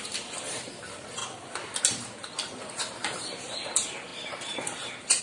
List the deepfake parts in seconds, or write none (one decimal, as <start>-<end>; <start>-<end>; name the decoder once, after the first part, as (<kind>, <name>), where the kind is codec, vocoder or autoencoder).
0.0-1.2 (vocoder, BigVGAN v2); 1.8-5.2